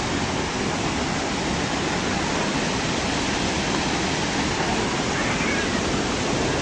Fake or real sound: real